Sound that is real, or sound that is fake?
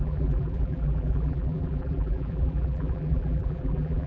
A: fake